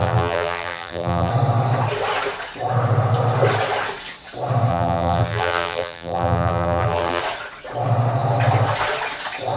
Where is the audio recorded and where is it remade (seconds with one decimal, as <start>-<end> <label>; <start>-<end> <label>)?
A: 0.0-1.3 remade; 1.3-4.7 recorded; 4.7-7.2 remade; 7.2-9.6 recorded